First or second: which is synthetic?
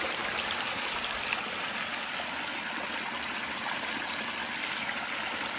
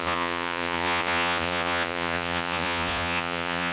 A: second